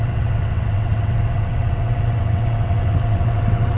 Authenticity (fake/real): fake